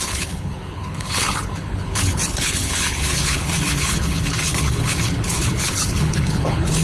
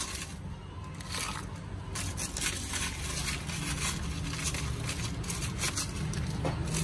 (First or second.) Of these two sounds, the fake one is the first